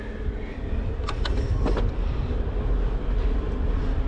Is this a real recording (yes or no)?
yes